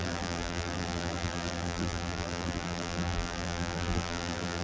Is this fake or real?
fake